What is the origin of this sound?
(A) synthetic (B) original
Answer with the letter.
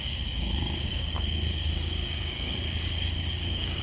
A